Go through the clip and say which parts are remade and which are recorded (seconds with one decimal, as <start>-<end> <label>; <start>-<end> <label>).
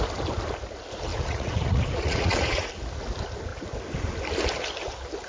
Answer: 0.0-1.1 recorded; 1.1-2.7 remade; 2.7-5.3 recorded